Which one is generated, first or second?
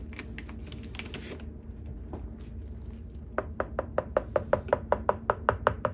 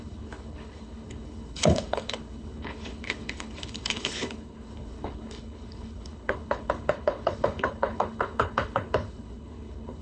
second